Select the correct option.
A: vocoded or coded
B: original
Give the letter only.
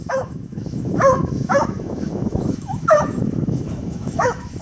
A